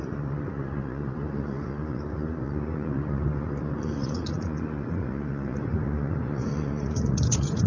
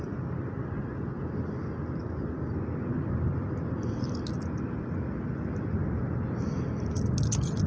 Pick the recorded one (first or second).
second